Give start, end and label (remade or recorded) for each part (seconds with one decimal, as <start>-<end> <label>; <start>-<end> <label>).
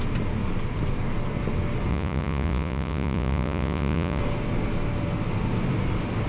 0.0-1.9 recorded; 1.9-4.2 remade; 4.2-6.3 recorded